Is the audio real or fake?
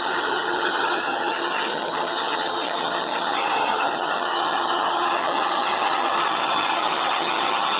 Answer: fake